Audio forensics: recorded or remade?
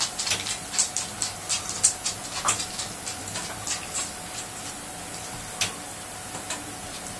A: recorded